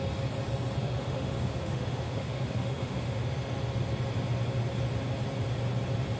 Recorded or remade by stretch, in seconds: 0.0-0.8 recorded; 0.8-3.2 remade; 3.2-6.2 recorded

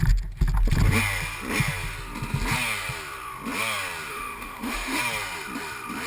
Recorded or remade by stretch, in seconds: 0.0-4.1 recorded; 4.1-5.0 remade; 5.0-6.1 recorded

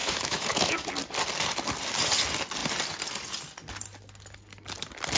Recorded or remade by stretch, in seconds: 0.0-0.9 remade; 0.9-5.2 recorded

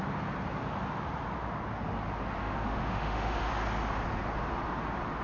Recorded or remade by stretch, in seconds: 0.0-2.4 recorded; 2.4-3.5 remade; 3.5-5.2 recorded

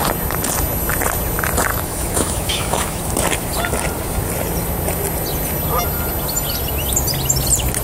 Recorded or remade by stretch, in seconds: 0.0-1.7 recorded; 1.7-3.0 remade; 3.0-7.8 recorded

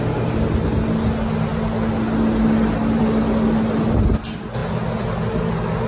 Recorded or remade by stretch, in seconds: 0.0-5.9 recorded

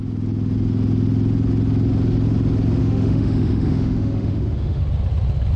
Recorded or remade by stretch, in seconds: 0.0-2.8 recorded; 2.8-4.8 remade; 4.8-5.6 recorded

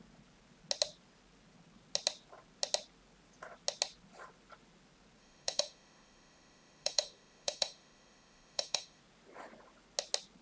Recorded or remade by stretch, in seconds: 0.0-5.2 recorded; 5.2-9.0 remade; 9.0-10.4 recorded